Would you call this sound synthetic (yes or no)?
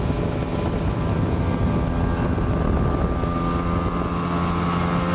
no